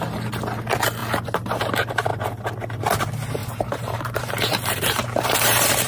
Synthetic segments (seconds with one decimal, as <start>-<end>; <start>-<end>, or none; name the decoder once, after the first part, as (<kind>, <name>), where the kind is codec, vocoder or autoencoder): 3.4-5.9 (vocoder, BigVGAN v2)